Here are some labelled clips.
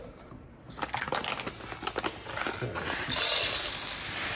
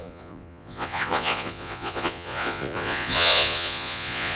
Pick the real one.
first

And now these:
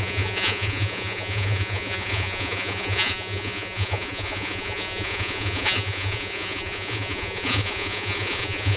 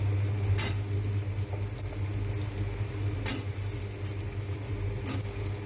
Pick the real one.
second